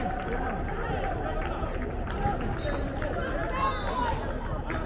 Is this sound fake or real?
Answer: real